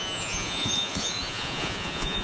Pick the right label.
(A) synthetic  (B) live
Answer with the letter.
A